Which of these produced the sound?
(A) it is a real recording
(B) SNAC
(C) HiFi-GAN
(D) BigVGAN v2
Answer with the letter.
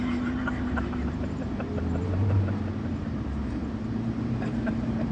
D